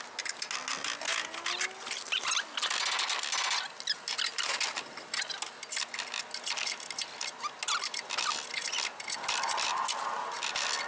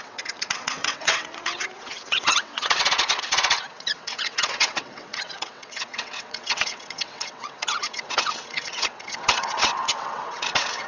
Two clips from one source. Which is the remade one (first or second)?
second